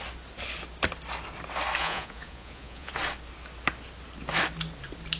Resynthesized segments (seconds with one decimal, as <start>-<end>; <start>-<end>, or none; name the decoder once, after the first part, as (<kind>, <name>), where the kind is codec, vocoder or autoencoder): 1.8-3.0 (vocoder, Vocos)